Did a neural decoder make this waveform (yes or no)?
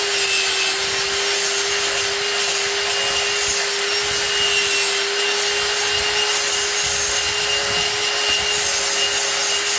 no